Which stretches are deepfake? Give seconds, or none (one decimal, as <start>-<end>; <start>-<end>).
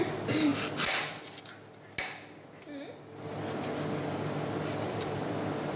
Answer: none